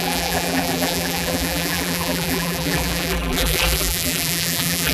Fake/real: fake